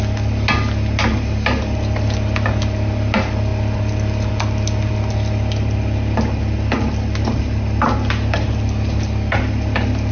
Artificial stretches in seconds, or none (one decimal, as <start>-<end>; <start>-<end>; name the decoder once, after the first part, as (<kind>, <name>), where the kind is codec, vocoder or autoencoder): none